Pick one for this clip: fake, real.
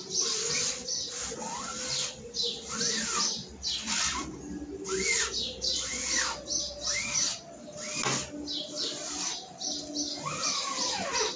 real